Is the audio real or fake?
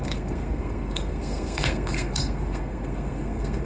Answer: fake